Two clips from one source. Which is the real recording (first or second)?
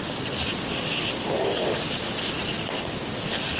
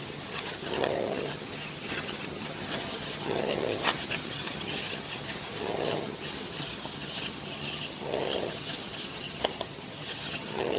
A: first